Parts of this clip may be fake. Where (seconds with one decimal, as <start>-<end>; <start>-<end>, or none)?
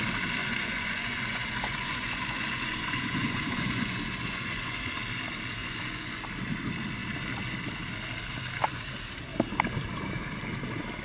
0.4-4.9; 5.6-6.2